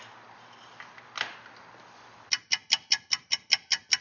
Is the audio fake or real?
real